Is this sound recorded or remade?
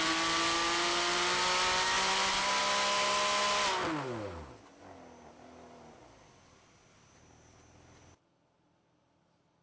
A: recorded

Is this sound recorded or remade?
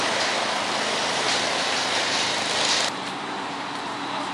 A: remade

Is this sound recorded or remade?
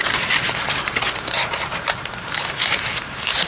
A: remade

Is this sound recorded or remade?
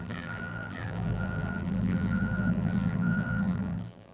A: remade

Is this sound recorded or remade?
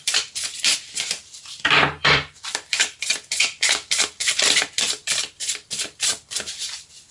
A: remade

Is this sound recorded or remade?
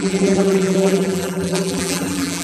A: remade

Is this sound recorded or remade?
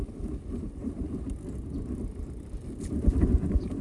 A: recorded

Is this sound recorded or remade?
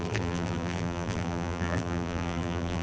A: remade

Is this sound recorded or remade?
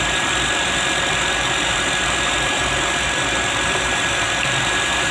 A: remade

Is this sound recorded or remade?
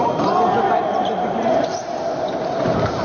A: remade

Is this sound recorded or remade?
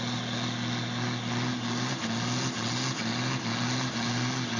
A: recorded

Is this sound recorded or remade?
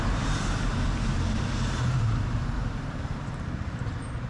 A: remade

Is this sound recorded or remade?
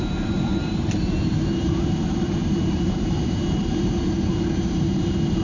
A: remade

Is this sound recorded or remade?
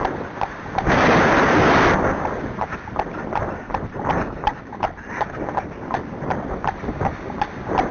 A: recorded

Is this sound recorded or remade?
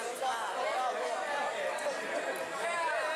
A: recorded